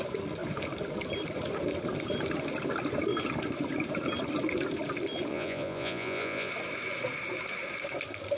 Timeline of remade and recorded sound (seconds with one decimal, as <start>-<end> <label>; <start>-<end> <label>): 0.0-5.3 recorded; 5.3-6.5 remade; 6.5-8.4 recorded